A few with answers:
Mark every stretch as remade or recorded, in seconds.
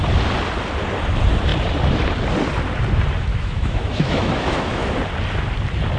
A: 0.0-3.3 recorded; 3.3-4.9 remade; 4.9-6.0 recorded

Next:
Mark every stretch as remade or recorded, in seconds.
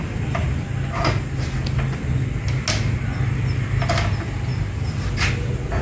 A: 0.0-5.8 recorded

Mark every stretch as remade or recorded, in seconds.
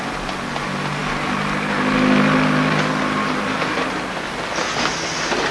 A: 0.0-5.5 recorded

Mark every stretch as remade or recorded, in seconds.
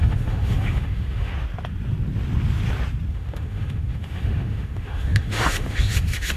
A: 0.0-1.3 remade; 1.3-3.1 recorded; 3.1-6.4 remade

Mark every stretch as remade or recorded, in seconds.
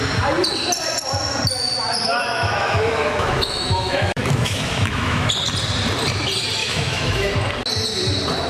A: 0.0-2.1 recorded; 2.1-5.3 remade; 5.3-6.6 recorded; 6.6-7.3 remade; 7.3-8.5 recorded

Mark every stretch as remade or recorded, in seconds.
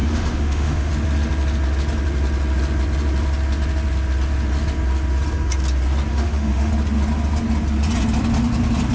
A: 0.0-0.9 remade; 0.9-6.1 recorded; 6.1-6.7 remade; 6.7-8.9 recorded